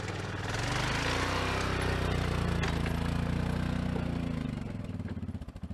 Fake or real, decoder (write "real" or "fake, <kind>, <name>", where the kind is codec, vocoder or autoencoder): real